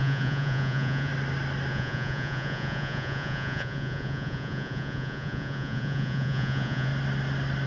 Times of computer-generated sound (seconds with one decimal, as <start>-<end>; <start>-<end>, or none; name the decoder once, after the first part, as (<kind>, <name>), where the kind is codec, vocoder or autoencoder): 0.0-1.1 (vocoder, Vocos); 1.7-6.9